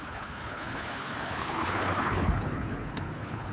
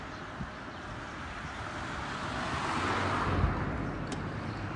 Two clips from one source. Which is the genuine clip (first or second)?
second